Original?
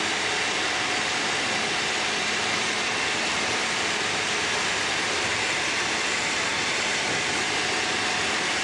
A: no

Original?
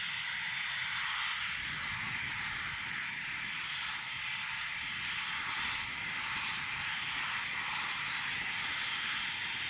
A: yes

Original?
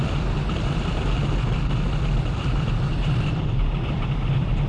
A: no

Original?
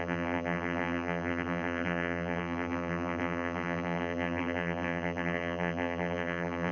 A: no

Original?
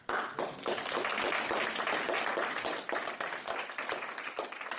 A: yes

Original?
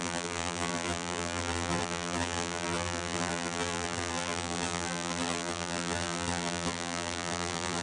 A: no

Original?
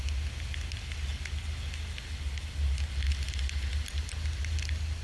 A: yes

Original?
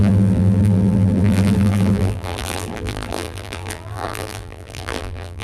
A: no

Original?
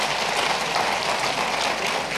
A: yes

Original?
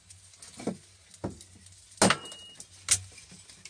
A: yes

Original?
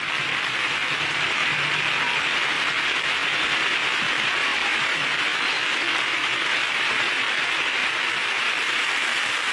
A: no